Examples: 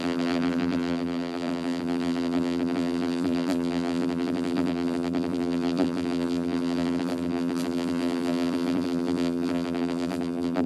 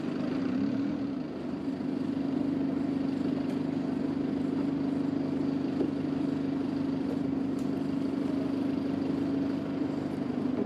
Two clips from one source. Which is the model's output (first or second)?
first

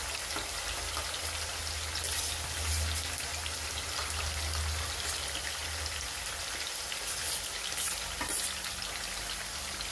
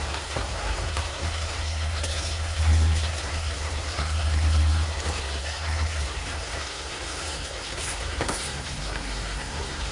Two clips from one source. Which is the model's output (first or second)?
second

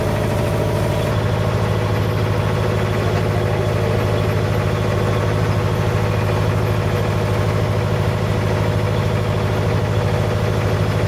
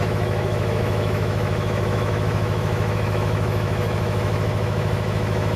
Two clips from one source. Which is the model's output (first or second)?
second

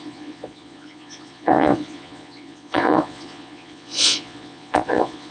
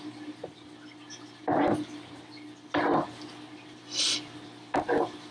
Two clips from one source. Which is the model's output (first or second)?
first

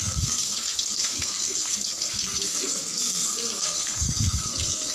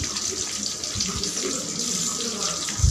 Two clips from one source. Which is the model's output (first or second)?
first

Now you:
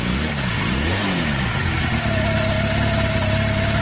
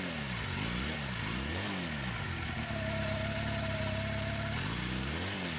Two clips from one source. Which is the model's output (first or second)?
first